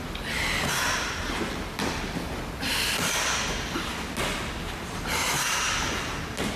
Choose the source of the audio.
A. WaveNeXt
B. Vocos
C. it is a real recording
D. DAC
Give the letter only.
C